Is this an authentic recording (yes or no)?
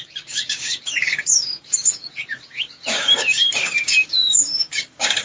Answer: no